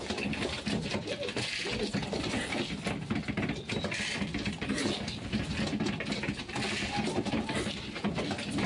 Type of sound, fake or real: real